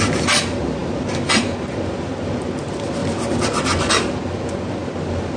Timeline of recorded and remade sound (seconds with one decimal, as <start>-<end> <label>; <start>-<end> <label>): 0.0-5.4 recorded